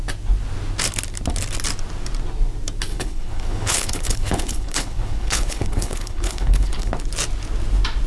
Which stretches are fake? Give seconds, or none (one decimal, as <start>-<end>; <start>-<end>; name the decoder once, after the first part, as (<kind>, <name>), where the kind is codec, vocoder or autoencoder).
2.9-6.9 (codec, HILCodec)